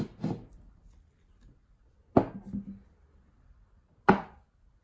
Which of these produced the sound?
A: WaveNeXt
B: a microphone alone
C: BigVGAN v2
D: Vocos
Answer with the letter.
B